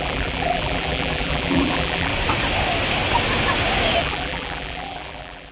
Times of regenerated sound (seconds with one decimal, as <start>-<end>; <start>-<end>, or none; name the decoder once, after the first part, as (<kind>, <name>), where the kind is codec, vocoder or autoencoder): 0.0-2.1 (vocoder, BigVGAN v2); 4.0-5.5